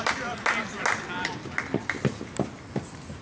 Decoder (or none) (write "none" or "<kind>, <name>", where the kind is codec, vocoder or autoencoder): none